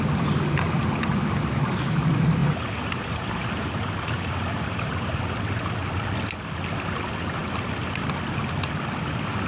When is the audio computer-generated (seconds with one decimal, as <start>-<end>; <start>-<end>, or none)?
2.4-5.2